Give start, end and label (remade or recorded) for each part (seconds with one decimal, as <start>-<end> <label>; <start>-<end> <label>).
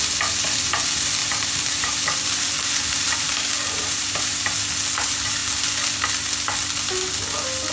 0.0-1.2 recorded; 1.2-4.4 remade; 4.4-7.7 recorded